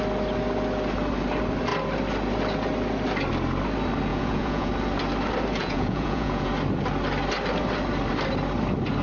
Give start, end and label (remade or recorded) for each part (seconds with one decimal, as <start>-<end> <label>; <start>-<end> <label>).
0.0-4.1 recorded; 4.1-4.7 remade; 4.7-5.6 recorded; 5.6-6.5 remade; 6.5-9.0 recorded